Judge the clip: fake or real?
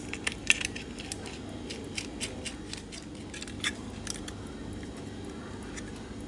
real